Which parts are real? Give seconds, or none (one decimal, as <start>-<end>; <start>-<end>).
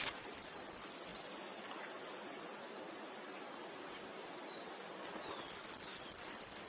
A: 0.0-6.7